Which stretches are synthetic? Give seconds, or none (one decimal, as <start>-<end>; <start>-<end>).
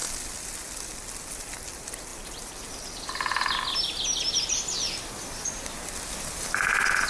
none